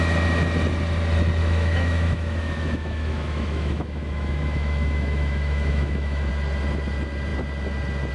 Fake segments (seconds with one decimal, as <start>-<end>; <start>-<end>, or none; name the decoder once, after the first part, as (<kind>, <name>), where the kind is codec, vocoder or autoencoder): 1.4-6.3 (autoencoder, DAC-VAE)